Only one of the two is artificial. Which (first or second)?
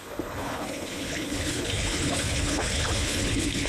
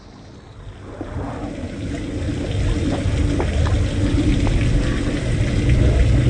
first